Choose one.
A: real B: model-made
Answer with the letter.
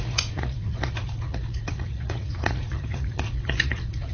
B